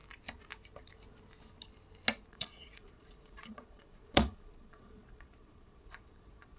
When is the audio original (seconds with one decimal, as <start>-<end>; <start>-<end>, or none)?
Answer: 0.0-2.3